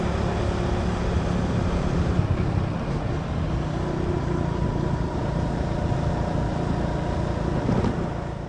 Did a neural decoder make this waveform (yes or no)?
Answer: no